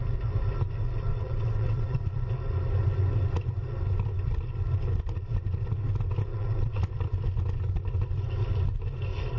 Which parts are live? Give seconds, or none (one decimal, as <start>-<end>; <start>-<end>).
0.0-1.1; 2.0-6.3; 6.8-9.4